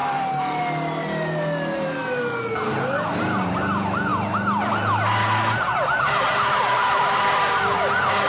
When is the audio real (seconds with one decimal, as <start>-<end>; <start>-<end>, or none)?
0.0-8.3